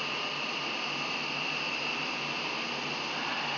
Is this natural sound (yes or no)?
yes